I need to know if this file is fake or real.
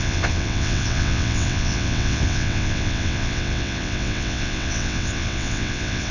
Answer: fake